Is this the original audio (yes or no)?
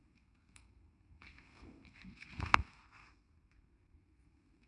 no